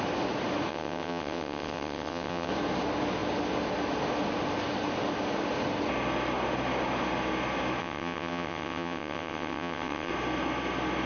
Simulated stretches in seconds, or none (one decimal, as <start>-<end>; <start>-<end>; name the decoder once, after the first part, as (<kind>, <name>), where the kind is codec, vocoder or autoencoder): 0.7-2.5 (vocoder, WaveNeXt); 7.8-10.1